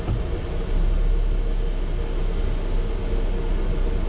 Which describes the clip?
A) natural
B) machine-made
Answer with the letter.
A